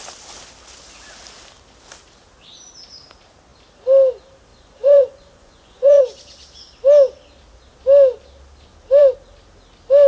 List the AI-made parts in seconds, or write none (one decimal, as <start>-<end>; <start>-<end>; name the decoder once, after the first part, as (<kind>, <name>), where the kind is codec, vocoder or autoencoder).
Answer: 4.5-6.0 (vocoder, Vocos)